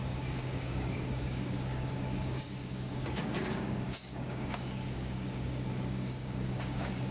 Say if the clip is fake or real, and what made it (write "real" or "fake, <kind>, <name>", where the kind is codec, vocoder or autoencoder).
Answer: fake, codec, DAC